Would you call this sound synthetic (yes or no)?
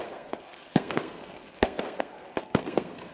yes